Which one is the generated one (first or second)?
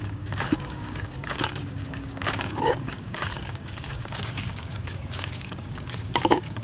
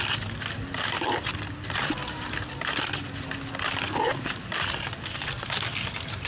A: first